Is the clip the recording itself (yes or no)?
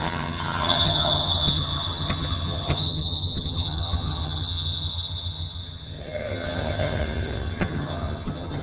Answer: no